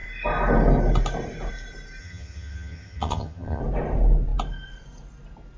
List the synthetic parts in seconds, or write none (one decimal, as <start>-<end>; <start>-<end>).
2.0-3.6